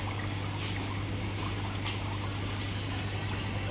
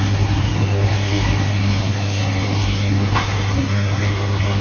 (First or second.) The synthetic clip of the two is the second